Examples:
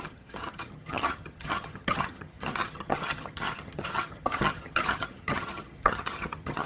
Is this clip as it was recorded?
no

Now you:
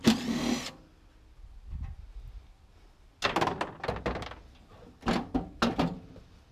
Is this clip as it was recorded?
yes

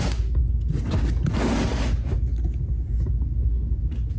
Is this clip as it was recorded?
yes